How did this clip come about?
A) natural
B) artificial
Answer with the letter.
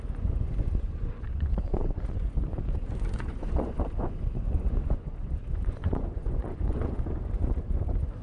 B